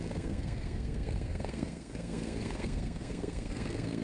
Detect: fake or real fake